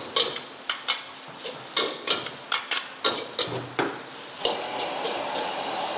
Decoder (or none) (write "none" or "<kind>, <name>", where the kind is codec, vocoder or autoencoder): none